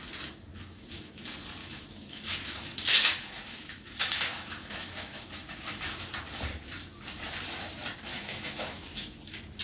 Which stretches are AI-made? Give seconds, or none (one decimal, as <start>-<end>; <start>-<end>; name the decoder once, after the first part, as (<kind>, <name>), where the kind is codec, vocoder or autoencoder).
0.5-1.2 (autoencoder, DAC-VAE); 1.6-6.0; 8.1-9.6